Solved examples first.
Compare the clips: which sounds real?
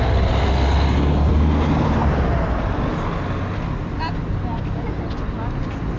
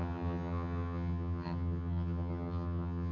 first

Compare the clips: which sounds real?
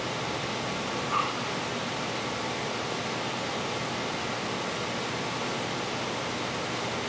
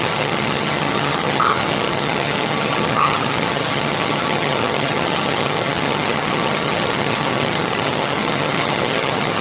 first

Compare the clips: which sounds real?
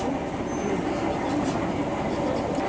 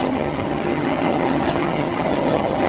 first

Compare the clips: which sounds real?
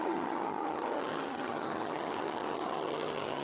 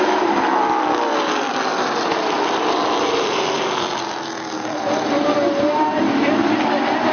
second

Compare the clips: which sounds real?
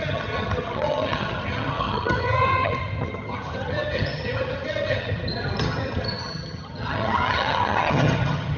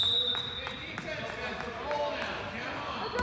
second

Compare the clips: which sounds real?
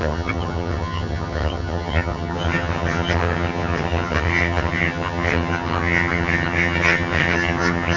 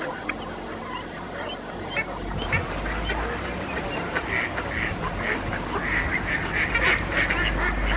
second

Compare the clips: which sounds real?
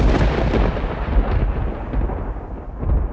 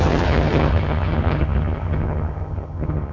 first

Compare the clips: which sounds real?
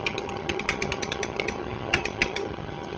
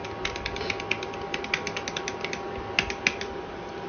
second